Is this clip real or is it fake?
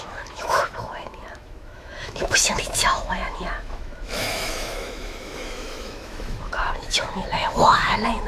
fake